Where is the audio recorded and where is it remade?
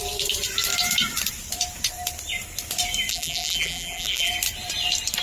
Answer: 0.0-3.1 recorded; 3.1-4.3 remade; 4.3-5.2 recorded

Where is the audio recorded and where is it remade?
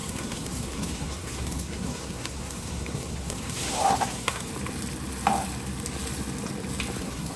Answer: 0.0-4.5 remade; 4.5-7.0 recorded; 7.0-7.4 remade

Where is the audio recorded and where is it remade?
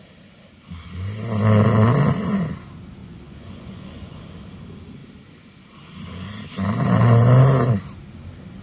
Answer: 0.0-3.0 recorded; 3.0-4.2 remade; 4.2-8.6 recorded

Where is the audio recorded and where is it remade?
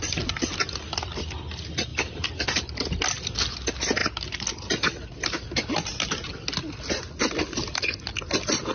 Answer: 0.0-8.7 recorded